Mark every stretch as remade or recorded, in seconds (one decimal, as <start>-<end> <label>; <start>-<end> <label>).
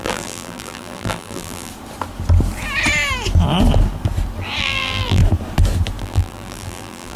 0.0-1.7 remade; 1.7-4.6 recorded; 4.6-5.2 remade; 5.2-6.0 recorded; 6.0-7.2 remade